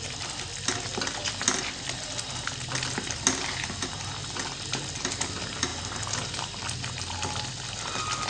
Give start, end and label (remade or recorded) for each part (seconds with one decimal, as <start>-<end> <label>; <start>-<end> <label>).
0.0-1.2 recorded; 1.2-3.6 remade; 3.6-8.3 recorded